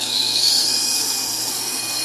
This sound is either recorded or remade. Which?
remade